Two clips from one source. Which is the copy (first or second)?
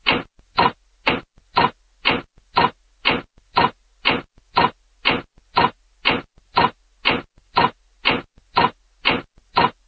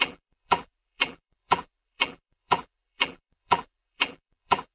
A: second